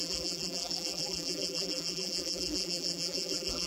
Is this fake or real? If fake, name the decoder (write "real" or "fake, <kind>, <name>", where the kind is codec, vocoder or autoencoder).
fake, vocoder, BigVGAN v2